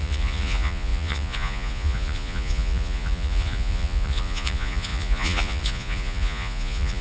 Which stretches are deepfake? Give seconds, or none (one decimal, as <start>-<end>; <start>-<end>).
0.0-7.0